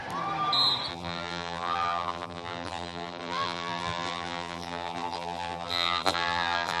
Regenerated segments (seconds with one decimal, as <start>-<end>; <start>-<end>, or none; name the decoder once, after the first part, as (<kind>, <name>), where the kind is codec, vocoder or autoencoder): 0.9-6.8 (vocoder, BigVGAN v2)